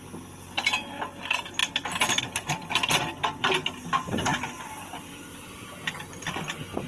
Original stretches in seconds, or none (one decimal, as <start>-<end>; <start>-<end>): 0.0-1.6; 2.2-4.3; 6.5-6.9